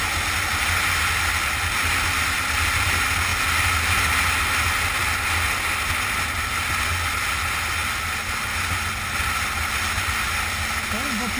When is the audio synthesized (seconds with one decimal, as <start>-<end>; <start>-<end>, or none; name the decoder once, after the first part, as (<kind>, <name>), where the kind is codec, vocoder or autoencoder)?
none